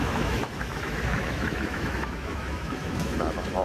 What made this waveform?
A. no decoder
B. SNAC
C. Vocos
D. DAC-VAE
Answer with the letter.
D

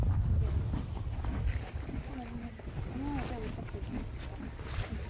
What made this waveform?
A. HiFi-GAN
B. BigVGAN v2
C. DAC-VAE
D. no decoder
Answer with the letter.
D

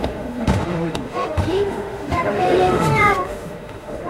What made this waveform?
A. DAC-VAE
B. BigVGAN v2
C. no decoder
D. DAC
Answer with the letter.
A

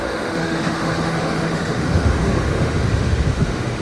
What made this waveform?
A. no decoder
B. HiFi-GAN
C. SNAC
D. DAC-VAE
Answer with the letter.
D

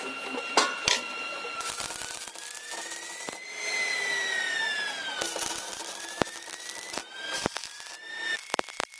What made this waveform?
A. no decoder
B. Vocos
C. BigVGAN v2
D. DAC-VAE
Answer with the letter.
A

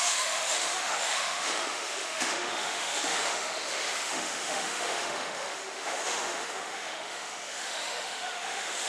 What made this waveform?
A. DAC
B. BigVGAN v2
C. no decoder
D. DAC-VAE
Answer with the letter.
D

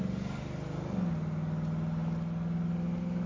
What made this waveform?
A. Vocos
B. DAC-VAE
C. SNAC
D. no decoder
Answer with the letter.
D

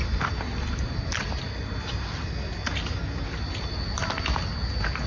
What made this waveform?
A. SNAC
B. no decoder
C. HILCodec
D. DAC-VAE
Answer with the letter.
B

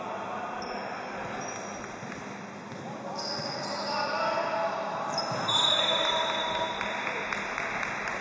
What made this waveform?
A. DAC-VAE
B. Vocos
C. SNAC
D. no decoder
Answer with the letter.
D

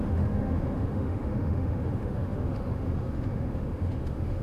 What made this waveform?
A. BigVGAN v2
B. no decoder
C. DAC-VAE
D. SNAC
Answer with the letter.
C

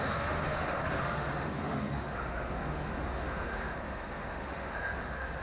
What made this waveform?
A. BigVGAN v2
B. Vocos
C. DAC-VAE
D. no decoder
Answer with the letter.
C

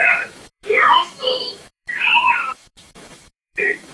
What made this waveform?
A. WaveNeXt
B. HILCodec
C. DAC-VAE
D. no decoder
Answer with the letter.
C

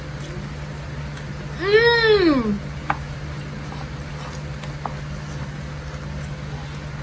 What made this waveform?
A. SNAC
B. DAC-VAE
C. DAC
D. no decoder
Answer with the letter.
D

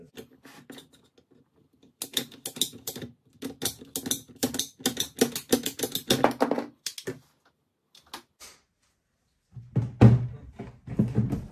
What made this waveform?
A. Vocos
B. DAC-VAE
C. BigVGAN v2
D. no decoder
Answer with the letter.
D